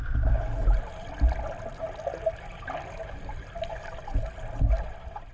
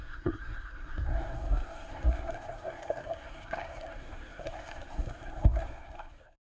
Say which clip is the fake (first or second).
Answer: second